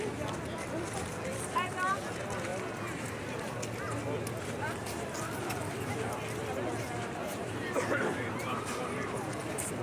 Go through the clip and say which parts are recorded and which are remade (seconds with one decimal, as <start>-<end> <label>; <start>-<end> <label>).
0.0-4.8 recorded; 4.8-6.2 remade; 6.2-7.2 recorded; 7.2-9.8 remade